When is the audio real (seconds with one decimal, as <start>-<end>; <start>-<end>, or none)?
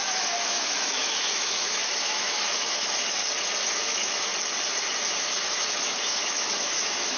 3.2-3.7; 4.3-5.0